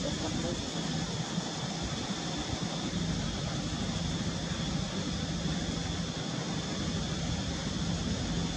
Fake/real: real